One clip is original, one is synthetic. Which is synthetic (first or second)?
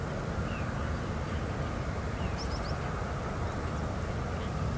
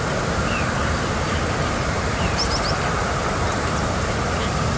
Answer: second